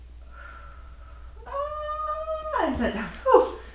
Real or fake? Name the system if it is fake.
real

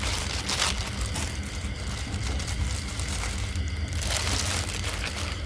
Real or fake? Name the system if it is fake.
fake, vocoder, BigVGAN v2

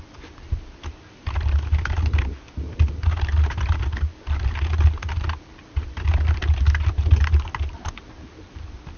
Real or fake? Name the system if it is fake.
real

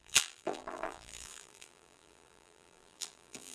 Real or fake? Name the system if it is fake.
fake, vocoder, BigVGAN v2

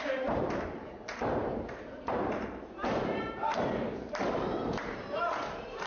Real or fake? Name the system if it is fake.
fake, vocoder, BigVGAN v2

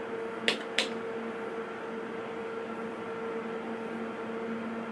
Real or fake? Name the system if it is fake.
real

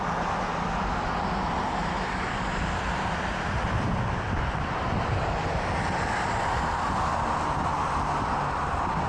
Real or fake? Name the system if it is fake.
real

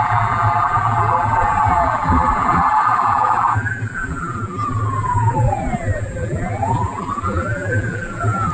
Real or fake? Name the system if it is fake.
fake, vocoder, BigVGAN v2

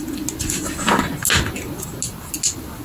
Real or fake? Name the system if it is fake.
real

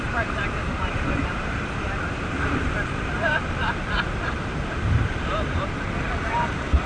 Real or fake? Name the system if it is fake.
fake, vocoder, BigVGAN v2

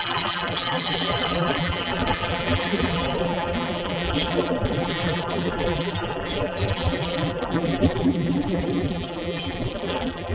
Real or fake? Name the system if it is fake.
fake, vocoder, BigVGAN v2